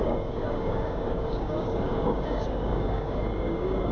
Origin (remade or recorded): remade